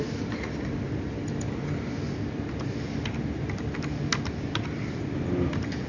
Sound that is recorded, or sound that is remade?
recorded